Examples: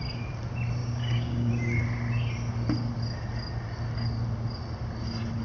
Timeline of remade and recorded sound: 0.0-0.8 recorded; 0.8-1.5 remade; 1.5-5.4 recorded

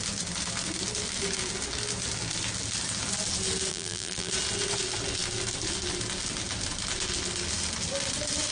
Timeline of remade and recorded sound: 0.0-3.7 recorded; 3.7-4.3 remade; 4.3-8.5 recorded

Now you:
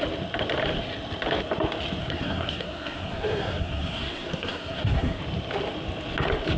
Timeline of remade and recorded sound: 0.0-2.0 recorded; 2.0-5.2 remade; 5.2-6.6 recorded